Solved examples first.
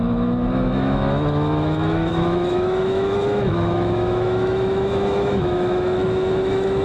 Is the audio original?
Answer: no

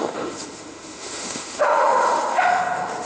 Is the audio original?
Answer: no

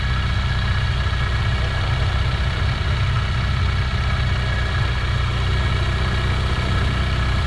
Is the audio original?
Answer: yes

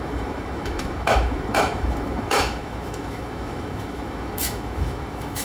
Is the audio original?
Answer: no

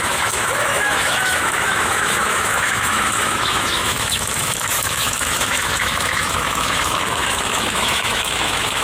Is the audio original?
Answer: no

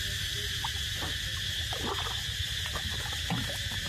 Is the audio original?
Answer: yes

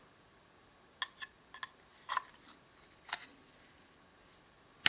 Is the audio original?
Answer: yes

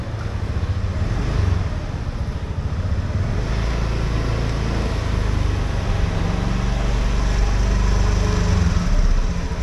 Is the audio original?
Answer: yes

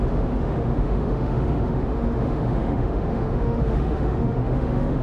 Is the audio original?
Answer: no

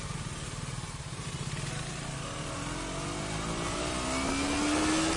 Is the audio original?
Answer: yes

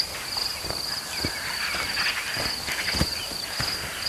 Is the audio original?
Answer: yes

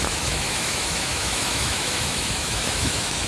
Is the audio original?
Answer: no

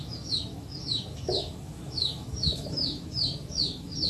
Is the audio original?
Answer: no